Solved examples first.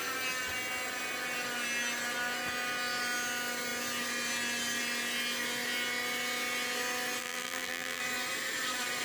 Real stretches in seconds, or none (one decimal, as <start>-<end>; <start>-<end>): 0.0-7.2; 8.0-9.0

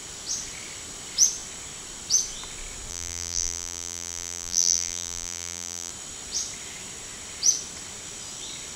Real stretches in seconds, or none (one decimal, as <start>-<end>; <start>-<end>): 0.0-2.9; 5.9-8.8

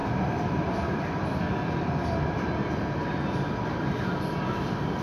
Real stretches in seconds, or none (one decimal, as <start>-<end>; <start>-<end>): 0.0-5.0

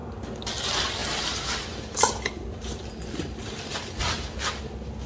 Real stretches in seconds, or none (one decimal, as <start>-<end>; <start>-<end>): 0.0-1.0; 4.0-5.1